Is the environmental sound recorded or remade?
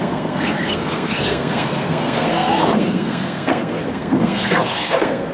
remade